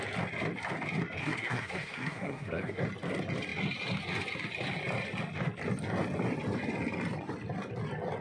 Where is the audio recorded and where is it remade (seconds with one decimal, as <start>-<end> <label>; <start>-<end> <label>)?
0.0-1.2 recorded; 1.2-2.8 remade; 2.8-8.2 recorded